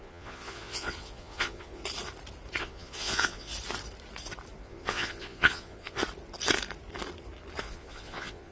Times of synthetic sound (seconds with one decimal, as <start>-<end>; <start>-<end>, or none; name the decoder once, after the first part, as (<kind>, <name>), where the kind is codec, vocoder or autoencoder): 0.0-1.8 (vocoder, Vocos); 2.6-3.5; 4.6-6.0; 7.6-8.5